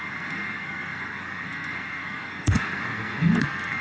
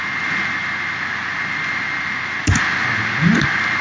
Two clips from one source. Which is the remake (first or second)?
first